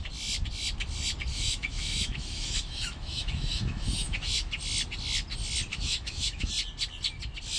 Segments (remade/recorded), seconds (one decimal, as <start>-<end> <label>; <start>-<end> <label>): 0.0-1.3 recorded; 1.3-4.6 remade; 4.6-5.7 recorded; 5.7-6.5 remade; 6.5-7.6 recorded